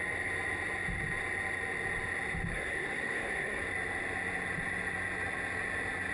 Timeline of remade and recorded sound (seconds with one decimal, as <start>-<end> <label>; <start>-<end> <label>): 0.0-2.5 recorded; 2.5-3.6 remade; 3.6-6.1 recorded